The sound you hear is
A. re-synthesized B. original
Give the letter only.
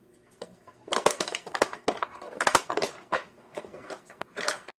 A